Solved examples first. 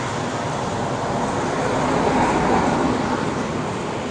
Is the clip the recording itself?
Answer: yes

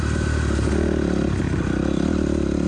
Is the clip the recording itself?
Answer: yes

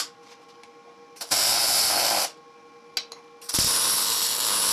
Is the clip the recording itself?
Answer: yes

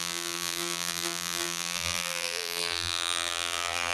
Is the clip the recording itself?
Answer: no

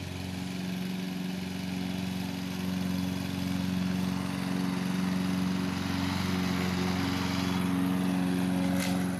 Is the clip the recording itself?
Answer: yes